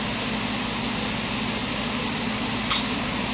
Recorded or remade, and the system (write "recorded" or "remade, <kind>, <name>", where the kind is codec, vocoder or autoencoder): recorded